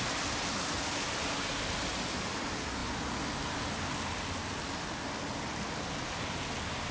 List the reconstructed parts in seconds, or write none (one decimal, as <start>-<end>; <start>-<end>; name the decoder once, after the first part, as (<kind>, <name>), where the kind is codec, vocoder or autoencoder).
none